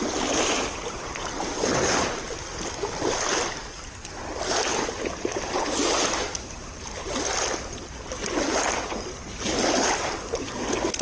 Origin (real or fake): real